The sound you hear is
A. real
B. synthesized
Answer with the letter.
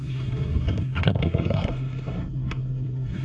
B